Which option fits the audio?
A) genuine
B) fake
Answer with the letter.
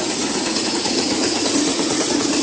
B